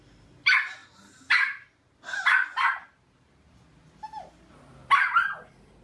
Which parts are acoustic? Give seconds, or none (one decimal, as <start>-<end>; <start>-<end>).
0.0-5.8